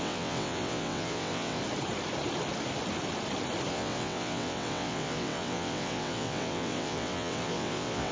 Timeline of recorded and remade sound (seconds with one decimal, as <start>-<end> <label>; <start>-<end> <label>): 0.0-1.6 remade; 1.6-3.7 recorded; 3.7-8.1 remade